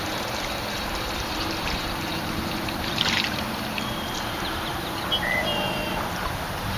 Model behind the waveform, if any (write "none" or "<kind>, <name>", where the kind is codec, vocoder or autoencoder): vocoder, BigVGAN v2